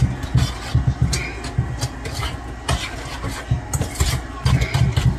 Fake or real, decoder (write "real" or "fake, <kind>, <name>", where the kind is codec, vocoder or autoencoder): real